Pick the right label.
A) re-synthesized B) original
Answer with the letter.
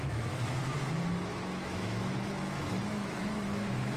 A